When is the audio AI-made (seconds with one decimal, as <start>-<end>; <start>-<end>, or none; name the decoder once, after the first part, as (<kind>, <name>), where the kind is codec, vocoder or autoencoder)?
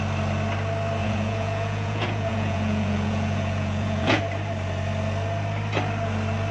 1.0-4.2 (vocoder, Vocos)